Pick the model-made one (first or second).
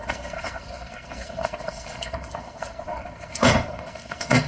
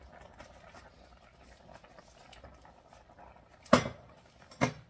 first